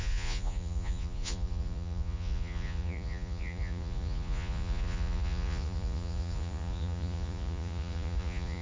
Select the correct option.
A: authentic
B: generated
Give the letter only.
B